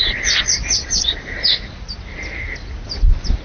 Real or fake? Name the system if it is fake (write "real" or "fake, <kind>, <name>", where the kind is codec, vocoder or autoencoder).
real